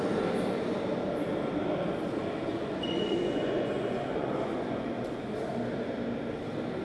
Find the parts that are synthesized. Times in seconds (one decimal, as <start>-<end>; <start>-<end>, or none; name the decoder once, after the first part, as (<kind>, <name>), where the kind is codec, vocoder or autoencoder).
2.5-4.9 (vocoder, Vocos)